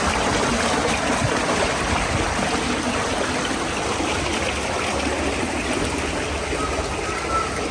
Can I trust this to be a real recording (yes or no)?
yes